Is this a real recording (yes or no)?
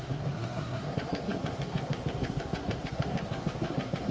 no